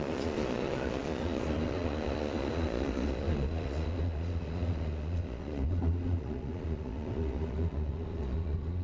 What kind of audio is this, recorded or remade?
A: remade